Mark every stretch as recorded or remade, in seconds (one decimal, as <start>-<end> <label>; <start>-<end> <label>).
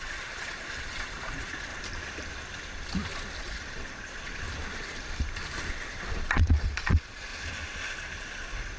0.0-1.7 remade; 1.7-3.4 recorded; 3.4-4.3 remade; 4.3-5.9 recorded; 5.9-7.3 remade; 7.3-8.0 recorded; 8.0-8.8 remade